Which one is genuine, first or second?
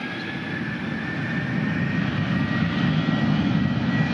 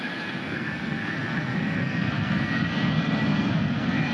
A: first